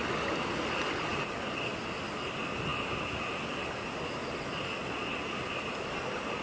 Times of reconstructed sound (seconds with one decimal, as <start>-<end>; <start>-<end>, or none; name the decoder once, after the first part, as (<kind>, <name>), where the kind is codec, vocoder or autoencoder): none